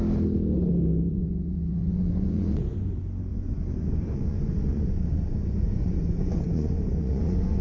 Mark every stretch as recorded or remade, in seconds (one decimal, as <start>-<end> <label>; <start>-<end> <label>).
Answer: 0.0-1.1 recorded; 1.1-2.9 remade; 2.9-3.3 recorded; 3.3-7.6 remade